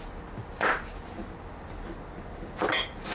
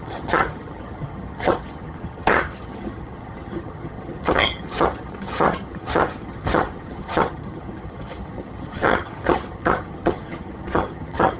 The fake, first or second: second